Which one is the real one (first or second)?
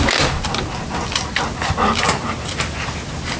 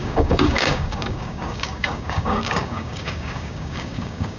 first